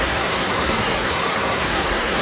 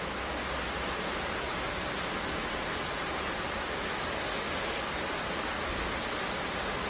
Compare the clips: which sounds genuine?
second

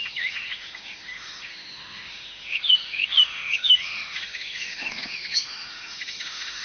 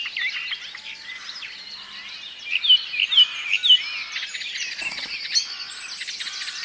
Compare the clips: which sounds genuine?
second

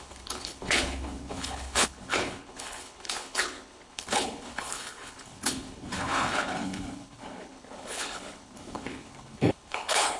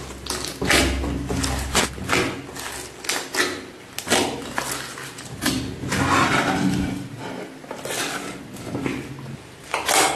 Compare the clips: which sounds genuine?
second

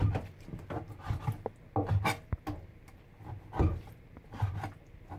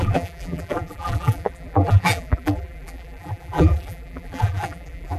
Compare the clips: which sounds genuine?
first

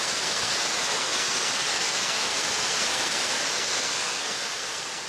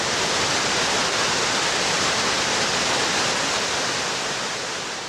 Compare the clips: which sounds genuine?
second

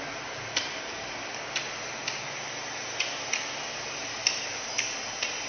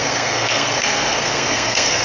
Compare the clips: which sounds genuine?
first